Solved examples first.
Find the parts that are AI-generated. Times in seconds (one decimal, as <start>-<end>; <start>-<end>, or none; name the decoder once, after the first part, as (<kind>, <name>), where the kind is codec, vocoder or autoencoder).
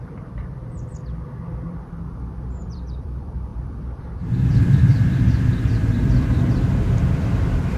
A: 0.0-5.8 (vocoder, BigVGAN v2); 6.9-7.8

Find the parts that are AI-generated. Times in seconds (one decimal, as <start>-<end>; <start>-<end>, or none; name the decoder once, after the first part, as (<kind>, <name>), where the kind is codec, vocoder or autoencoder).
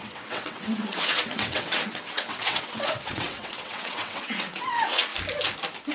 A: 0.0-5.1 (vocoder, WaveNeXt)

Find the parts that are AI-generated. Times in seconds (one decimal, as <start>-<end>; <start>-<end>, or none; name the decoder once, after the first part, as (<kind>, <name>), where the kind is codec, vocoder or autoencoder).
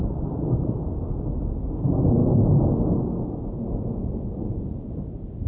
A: none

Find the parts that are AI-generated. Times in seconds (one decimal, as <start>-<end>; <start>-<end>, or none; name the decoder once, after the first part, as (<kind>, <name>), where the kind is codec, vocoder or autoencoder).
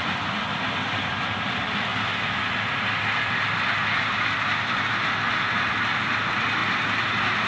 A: none